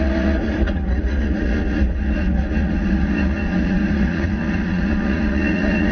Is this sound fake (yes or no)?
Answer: yes